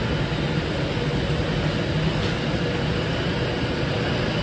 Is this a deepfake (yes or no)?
no